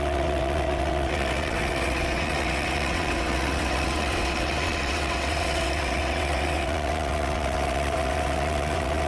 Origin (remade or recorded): remade